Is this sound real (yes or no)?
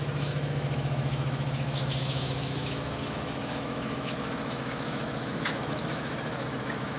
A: no